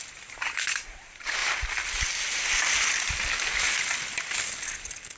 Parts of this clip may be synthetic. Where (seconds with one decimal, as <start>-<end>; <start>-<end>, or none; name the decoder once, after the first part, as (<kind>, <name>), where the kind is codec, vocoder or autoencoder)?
none